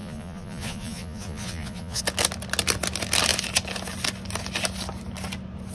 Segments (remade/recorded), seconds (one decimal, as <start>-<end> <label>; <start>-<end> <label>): 0.0-2.0 remade; 2.0-5.7 recorded